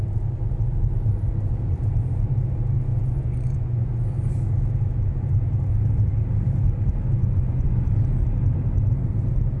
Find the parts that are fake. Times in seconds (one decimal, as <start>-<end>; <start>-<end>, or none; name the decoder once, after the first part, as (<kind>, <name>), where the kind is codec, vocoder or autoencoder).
2.9-4.0 (vocoder, Vocos); 7.2-7.9